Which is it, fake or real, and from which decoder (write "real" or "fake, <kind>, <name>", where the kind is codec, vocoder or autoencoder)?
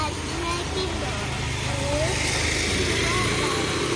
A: real